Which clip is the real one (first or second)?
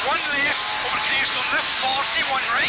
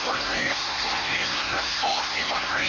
first